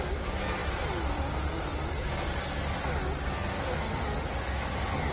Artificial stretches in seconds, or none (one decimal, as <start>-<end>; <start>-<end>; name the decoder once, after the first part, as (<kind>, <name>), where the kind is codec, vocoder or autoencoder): none